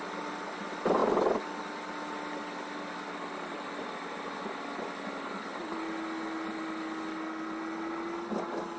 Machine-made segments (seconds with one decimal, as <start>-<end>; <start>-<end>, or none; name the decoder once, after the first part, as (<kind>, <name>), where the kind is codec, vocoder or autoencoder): none